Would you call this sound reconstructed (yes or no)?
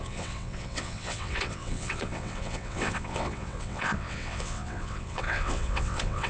yes